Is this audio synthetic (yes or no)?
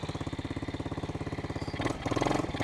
no